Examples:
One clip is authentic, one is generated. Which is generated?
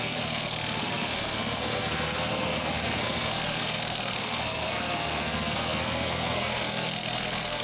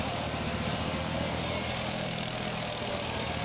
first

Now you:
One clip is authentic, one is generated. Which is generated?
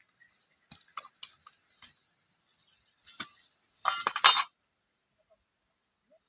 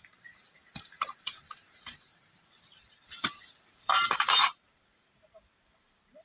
second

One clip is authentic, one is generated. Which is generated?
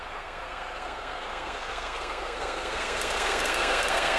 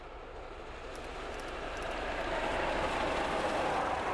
first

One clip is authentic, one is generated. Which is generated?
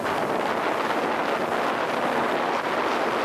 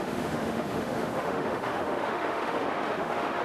second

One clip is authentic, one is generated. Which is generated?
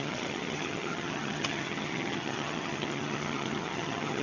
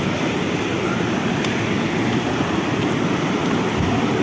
first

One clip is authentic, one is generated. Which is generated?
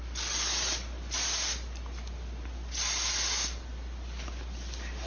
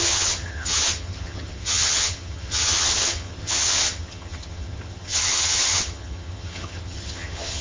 second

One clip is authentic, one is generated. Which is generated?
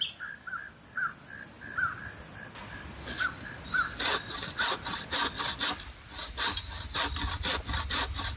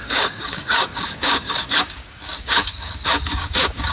second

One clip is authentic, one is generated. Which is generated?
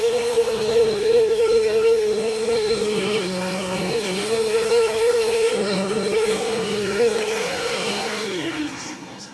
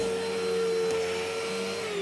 first